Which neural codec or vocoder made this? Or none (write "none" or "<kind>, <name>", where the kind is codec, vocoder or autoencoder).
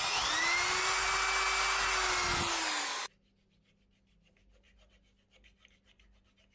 none